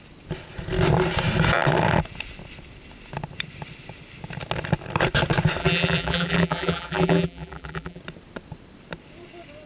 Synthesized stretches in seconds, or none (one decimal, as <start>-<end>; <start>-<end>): 5.6-8.0